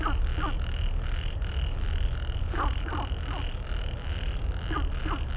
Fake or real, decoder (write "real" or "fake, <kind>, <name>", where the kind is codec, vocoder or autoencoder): real